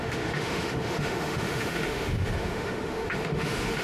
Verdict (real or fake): fake